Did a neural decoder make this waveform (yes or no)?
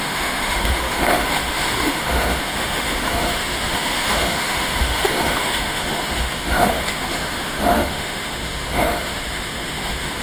yes